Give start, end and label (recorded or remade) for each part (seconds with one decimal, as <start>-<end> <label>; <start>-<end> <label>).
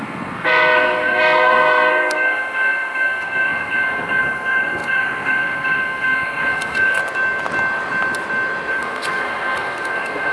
0.0-7.0 remade; 7.0-8.7 recorded; 8.7-10.3 remade